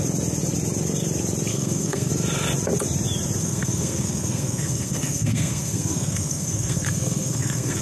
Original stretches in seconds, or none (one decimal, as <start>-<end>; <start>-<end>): 0.0-1.5; 2.1-3.4